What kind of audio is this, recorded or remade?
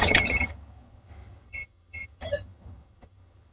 remade